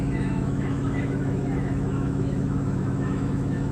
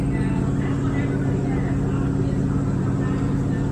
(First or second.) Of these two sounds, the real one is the second